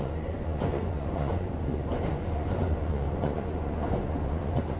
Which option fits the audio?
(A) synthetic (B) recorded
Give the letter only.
A